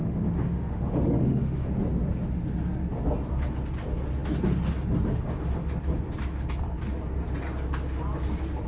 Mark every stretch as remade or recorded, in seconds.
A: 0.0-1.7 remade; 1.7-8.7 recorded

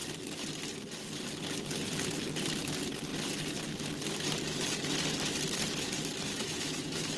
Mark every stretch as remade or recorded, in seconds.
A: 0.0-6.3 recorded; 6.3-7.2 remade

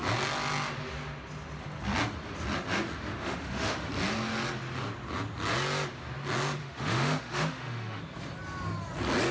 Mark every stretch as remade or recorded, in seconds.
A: 0.0-3.2 recorded; 3.2-3.9 remade; 3.9-6.6 recorded; 6.6-8.0 remade; 8.0-9.3 recorded